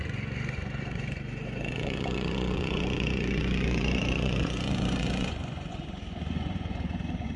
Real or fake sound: fake